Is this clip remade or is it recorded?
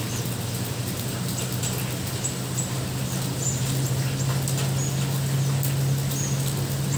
recorded